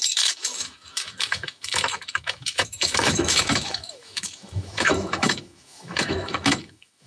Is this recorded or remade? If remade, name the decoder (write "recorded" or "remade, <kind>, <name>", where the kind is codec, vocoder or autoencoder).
remade, autoencoder, DAC-VAE